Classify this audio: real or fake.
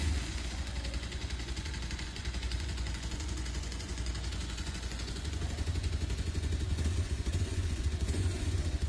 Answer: fake